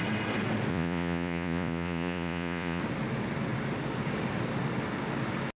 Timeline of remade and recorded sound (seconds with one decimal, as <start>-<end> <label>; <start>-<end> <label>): 0.0-0.7 recorded; 0.7-2.8 remade; 2.8-5.6 recorded